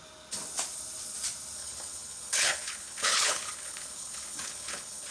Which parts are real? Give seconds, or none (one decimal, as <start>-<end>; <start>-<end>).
0.0-1.6